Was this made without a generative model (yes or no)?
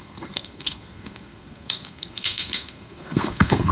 no